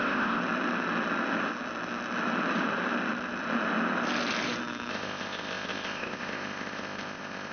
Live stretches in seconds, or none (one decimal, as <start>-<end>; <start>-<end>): 0.4-4.9